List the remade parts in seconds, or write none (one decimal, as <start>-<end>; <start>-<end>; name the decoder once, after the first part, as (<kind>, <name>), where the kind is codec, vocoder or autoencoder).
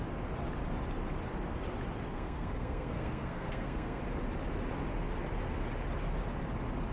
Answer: 2.1-4.0 (codec, SNAC)